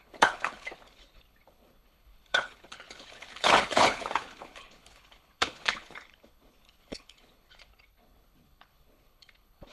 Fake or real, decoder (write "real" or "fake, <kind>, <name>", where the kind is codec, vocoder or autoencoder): fake, codec, HILCodec